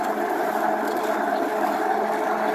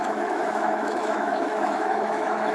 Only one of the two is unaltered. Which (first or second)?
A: first